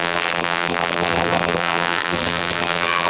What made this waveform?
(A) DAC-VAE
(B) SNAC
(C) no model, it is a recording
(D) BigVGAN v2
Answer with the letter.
D